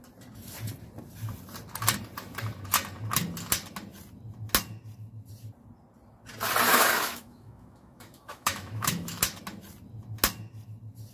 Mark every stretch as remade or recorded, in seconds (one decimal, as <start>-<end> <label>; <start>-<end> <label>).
0.0-6.7 recorded; 6.7-9.2 remade; 9.2-11.1 recorded